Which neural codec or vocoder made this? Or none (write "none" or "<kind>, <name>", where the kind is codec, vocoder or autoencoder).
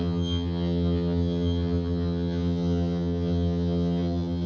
vocoder, HiFi-GAN